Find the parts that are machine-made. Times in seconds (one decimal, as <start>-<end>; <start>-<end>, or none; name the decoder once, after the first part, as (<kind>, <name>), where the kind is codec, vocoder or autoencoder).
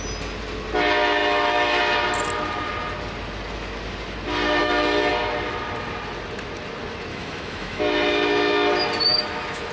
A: 1.2-1.8 (autoencoder, DAC-VAE); 4.6-5.1; 7.1-7.8; 9.1-9.7